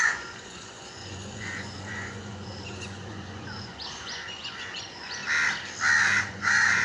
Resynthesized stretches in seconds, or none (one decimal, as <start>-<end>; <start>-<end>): 0.0-5.2; 6.2-6.8